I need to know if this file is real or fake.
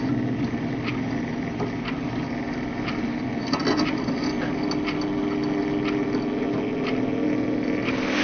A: real